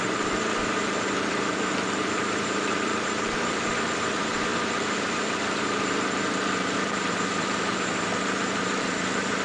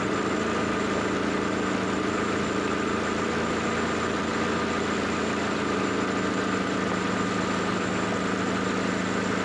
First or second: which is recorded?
second